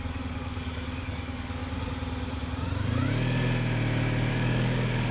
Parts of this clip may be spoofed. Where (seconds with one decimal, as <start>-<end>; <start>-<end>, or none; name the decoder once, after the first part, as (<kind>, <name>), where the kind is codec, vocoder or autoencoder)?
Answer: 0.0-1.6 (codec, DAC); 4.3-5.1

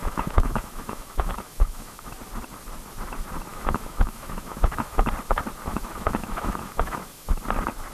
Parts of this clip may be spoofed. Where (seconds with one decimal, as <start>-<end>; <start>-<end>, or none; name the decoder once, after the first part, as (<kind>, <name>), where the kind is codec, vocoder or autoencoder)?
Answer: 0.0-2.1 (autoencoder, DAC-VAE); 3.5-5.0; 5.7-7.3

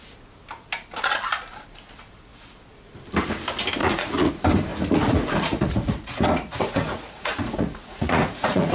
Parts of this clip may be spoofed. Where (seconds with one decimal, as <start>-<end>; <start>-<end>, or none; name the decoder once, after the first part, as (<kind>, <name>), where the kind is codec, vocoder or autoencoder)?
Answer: 3.8-4.3 (vocoder, Vocos); 4.7-8.7

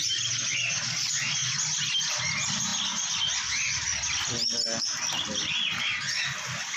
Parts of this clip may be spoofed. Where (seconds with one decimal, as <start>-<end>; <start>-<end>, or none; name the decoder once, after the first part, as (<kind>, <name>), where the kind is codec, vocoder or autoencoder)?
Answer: 2.7-5.8 (vocoder, BigVGAN v2)